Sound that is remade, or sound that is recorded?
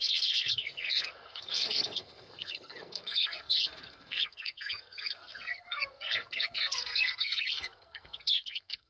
remade